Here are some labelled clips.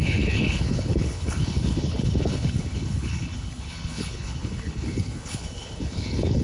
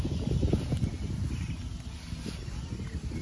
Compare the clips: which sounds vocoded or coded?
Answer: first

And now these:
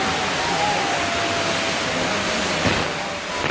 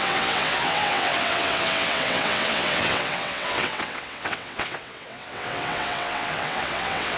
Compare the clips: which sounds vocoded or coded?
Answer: second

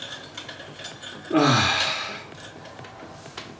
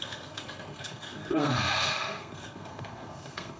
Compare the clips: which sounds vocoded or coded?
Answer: second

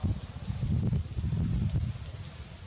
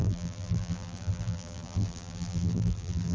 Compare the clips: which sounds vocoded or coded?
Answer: second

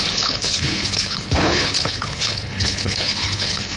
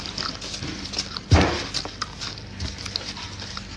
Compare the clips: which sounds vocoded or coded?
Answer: first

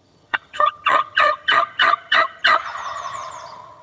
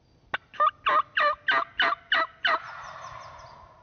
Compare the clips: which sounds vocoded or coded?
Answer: first